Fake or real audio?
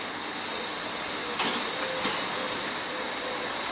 real